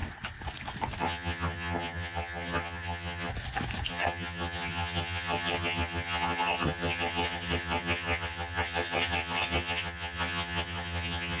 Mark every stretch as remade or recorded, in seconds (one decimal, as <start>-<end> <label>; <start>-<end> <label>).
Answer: 0.0-1.0 recorded; 1.0-3.3 remade; 3.3-3.9 recorded; 3.9-11.4 remade